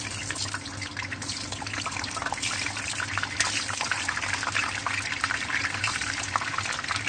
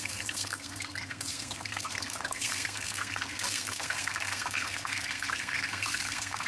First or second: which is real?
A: first